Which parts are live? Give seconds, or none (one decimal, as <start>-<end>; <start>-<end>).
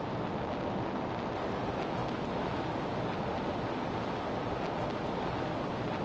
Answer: 0.0-6.0